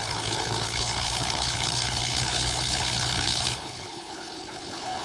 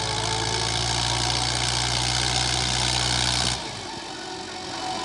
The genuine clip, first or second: second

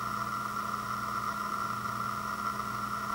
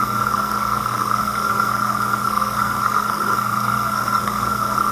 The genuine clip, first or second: first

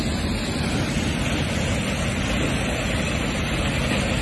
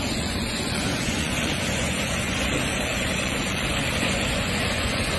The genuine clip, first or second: first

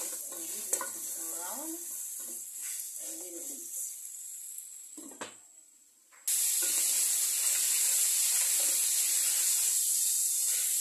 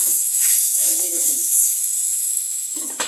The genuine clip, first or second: first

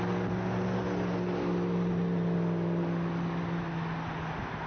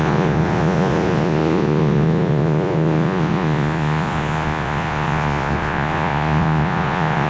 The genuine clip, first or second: first